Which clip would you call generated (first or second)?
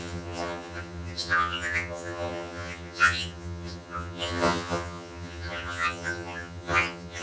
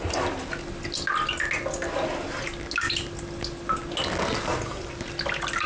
first